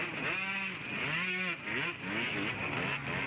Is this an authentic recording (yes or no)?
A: yes